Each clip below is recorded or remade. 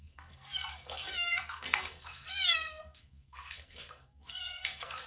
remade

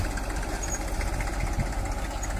recorded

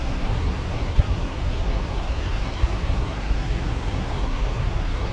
remade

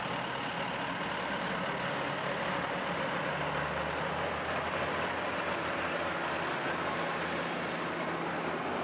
recorded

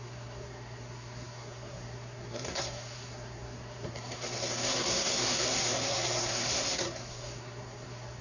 remade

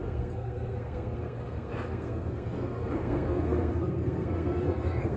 remade